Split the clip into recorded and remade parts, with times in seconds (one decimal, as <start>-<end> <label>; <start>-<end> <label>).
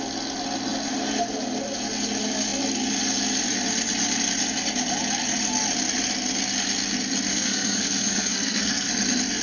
0.0-7.3 recorded; 7.3-8.9 remade; 8.9-9.4 recorded